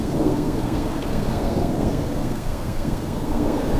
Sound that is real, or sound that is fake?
fake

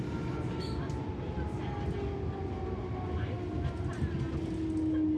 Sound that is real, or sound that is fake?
real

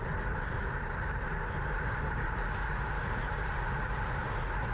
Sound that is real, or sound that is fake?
real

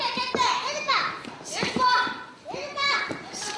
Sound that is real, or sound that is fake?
fake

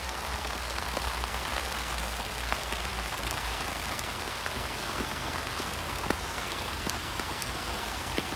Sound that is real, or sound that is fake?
fake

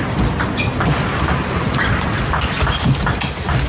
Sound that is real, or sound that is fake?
fake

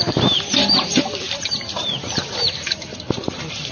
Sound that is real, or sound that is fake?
fake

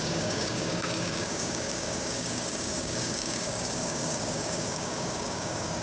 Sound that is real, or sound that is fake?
fake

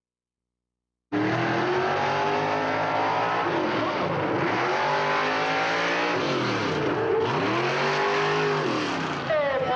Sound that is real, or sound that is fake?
real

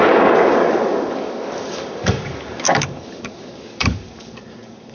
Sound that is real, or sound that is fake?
fake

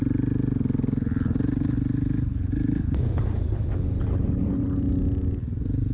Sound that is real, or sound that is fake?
real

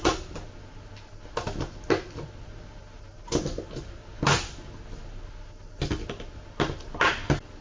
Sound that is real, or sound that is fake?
real